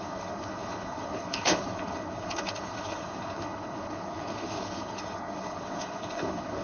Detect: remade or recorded remade